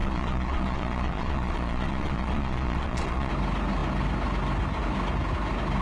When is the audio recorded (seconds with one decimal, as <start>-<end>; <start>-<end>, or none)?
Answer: 3.3-5.8